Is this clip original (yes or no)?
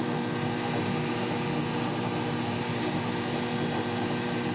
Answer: yes